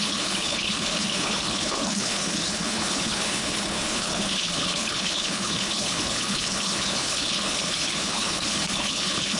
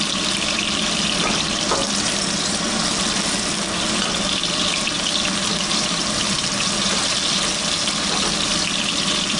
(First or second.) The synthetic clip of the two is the first